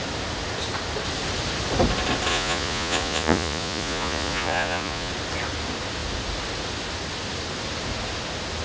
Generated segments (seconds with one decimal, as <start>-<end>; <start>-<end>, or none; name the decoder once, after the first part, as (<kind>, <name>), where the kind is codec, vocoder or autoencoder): 2.3-5.1 (vocoder, Vocos)